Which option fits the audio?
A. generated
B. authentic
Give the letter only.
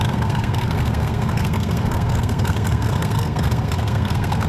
A